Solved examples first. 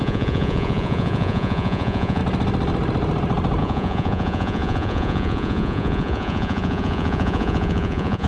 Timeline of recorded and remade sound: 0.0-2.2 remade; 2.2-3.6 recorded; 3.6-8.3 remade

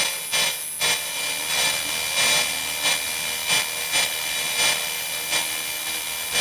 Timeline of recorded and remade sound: 0.0-6.4 recorded